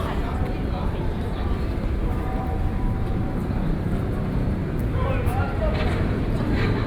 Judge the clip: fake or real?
fake